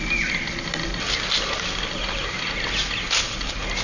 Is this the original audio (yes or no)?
yes